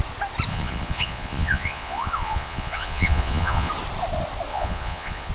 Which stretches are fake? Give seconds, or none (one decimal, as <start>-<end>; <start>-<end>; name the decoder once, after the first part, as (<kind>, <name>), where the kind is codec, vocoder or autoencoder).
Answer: 0.5-3.7 (vocoder, Vocos); 4.5-5.3

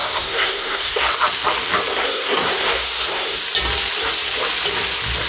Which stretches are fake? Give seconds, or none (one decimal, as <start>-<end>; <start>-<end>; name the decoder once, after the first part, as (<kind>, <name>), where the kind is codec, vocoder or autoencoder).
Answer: 0.0-1.0 (codec, SNAC); 1.9-3.4

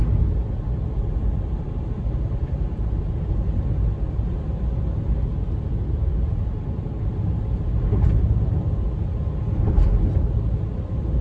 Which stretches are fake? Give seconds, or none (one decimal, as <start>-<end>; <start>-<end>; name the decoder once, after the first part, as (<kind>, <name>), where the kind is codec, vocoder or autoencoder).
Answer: 2.4-4.2 (vocoder, BigVGAN v2)

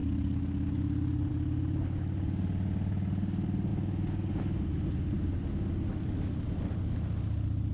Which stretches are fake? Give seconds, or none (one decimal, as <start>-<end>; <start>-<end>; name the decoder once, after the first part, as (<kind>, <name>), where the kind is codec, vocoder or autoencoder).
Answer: none

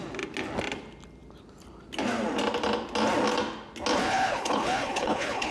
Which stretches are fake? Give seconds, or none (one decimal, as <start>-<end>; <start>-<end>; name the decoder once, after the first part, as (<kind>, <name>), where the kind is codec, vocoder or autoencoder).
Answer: 4.0-5.5 (codec, HILCodec)

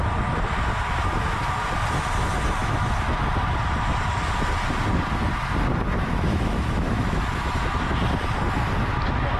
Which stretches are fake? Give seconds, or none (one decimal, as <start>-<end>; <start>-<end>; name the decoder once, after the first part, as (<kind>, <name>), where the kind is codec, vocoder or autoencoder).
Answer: 2.6-3.2 (autoencoder, DAC-VAE); 6.3-7.2